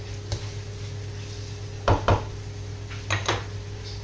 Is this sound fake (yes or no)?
no